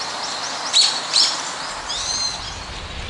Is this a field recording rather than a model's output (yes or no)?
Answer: yes